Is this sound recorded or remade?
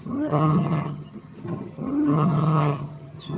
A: remade